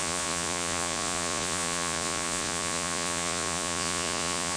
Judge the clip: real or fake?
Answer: fake